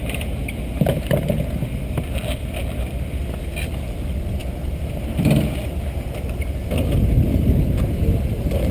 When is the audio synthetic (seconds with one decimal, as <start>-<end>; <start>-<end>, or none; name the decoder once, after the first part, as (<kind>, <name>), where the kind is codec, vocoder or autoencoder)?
none